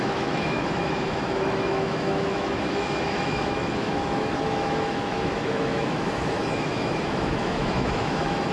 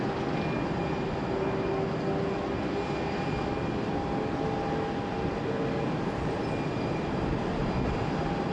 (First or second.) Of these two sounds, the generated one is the first